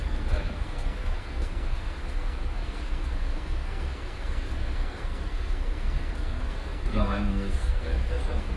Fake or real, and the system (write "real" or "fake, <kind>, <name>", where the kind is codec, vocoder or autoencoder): fake, codec, SNAC